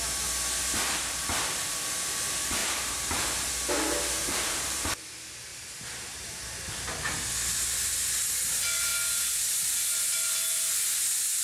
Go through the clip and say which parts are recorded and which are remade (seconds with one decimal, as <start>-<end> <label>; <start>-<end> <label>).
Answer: 0.0-2.6 recorded; 2.6-3.5 remade; 3.5-4.2 recorded; 4.2-4.9 remade; 4.9-5.5 recorded; 5.5-6.9 remade; 6.9-11.4 recorded